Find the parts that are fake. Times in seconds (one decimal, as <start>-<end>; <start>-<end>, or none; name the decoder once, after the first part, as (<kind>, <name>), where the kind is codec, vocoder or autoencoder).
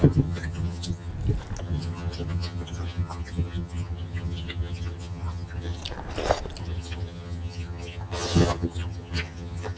0.0-1.1 (vocoder, HiFi-GAN); 1.6-5.8; 6.6-9.8